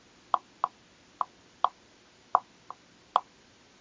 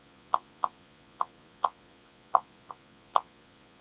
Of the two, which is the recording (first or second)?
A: first